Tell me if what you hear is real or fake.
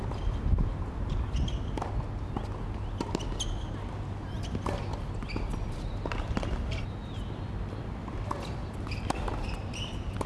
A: real